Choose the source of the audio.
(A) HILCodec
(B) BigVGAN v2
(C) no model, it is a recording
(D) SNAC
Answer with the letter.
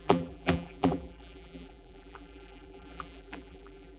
B